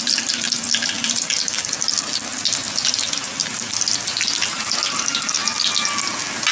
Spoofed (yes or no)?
no